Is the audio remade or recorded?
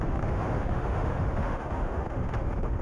remade